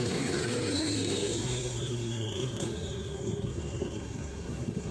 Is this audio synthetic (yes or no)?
yes